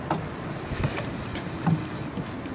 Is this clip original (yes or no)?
yes